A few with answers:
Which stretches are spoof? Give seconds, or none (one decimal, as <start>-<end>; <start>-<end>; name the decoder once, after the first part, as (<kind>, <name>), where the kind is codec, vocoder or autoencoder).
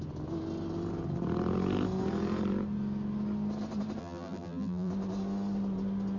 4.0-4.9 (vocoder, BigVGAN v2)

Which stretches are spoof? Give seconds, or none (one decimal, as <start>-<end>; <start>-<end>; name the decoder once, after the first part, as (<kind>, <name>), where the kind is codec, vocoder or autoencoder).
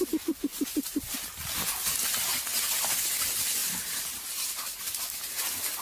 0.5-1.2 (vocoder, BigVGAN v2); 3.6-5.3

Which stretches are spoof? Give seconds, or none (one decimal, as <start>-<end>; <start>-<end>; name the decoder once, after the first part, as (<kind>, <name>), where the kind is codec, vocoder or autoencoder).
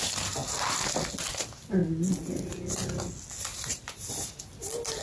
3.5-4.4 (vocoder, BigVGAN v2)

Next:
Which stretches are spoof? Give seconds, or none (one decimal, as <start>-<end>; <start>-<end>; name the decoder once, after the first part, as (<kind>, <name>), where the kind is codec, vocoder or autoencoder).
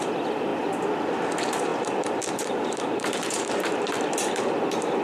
0.0-0.5 (vocoder, BigVGAN v2); 1.2-5.0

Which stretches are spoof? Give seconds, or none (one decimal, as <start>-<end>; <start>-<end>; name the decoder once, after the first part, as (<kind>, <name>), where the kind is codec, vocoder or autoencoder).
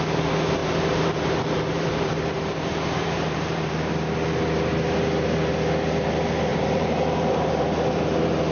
0.6-3.9 (vocoder, BigVGAN v2); 6.5-7.6